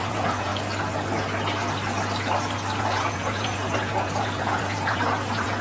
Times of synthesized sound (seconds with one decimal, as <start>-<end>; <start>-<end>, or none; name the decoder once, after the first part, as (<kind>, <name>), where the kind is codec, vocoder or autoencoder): 0.0-0.5 (vocoder, Vocos); 2.8-5.6

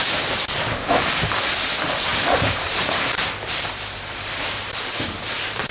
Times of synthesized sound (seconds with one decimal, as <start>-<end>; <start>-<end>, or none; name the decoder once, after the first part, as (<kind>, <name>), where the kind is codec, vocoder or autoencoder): 2.1-5.7 (vocoder, BigVGAN v2)

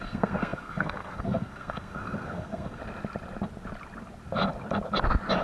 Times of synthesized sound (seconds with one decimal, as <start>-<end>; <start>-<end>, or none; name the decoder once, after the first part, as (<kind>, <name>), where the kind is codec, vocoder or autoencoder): 0.0-2.8 (codec, SNAC)

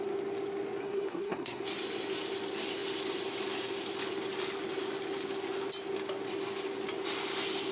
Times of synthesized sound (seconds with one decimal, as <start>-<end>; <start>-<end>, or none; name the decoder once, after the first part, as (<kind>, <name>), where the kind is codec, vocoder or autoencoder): 0.8-1.6 (codec, SNAC)